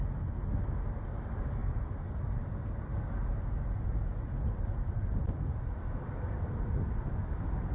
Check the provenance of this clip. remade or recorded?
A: recorded